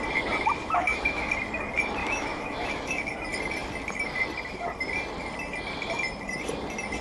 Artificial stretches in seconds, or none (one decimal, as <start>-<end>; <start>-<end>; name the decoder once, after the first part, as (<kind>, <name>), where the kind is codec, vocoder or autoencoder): 0.6-1.3 (autoencoder, DAC-VAE); 2.0-3.0